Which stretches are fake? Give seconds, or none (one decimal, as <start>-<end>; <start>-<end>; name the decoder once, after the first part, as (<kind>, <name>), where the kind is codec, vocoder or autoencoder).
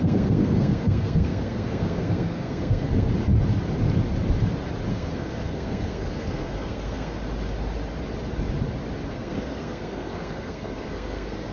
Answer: 0.0-3.1 (codec, SNAC); 4.9-7.2; 9.1-11.5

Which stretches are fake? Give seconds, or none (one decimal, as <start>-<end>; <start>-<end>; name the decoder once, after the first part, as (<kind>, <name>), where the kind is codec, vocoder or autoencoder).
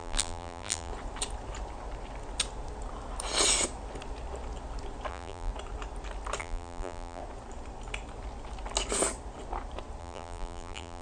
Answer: 0.0-0.9 (vocoder, BigVGAN v2); 5.1-5.5; 6.4-7.2; 10.0-11.0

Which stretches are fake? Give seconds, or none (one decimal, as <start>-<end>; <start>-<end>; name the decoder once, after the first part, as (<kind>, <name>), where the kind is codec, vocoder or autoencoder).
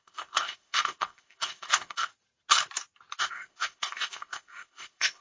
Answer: 0.0-2.1 (codec, ZipCodec); 3.2-5.2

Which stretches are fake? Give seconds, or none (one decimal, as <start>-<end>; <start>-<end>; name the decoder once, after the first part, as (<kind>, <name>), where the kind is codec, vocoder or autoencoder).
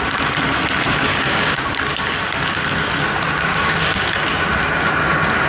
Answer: 1.1-1.7 (codec, DAC); 3.5-4.1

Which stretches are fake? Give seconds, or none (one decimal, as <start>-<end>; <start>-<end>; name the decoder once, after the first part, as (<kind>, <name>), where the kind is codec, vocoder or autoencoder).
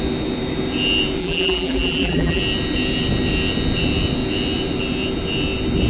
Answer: 1.2-2.4 (vocoder, BigVGAN v2)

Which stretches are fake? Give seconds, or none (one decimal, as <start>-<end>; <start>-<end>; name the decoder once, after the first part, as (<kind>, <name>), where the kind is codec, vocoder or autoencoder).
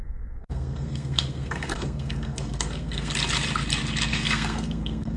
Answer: 0.0-3.1 (codec, SNAC); 4.1-5.2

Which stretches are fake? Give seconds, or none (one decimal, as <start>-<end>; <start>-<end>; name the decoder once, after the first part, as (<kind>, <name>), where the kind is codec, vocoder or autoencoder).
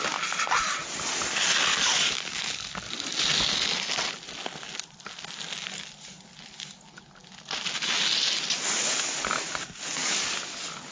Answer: 1.7-2.7 (codec, DAC)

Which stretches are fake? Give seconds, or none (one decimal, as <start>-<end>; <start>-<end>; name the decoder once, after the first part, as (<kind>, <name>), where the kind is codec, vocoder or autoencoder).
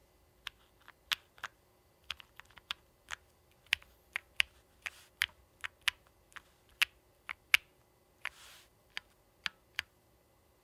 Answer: none